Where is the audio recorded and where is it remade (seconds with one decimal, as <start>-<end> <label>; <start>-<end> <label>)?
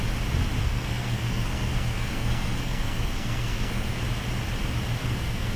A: 0.0-0.6 recorded; 0.6-4.0 remade; 4.0-5.0 recorded; 5.0-5.6 remade